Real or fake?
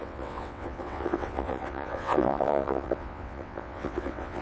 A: fake